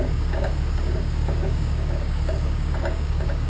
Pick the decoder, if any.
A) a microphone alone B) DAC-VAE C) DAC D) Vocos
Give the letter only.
C